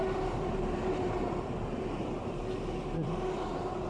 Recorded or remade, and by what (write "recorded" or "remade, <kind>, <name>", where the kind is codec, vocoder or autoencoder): recorded